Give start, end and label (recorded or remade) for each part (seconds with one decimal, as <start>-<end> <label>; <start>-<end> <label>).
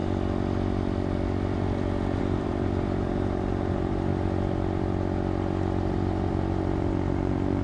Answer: 0.0-2.2 recorded; 2.2-4.1 remade; 4.1-5.8 recorded; 5.8-7.6 remade